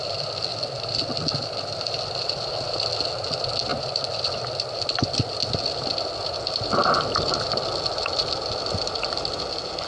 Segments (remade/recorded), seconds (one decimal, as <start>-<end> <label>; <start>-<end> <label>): 0.0-0.5 recorded; 0.5-2.9 remade; 2.9-9.9 recorded